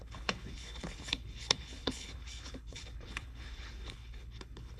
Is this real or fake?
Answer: fake